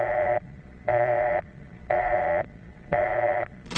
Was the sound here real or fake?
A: fake